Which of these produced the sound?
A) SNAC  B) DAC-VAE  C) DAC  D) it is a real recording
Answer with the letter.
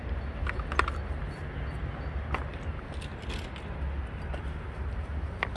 D